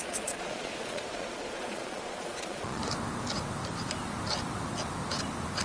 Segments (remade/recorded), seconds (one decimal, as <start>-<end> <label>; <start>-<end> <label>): 0.0-2.8 remade; 2.8-5.6 recorded